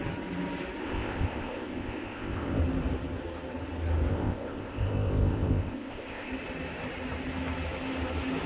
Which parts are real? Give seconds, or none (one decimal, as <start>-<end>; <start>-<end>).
0.0-0.8; 2.6-4.1; 6.3-8.5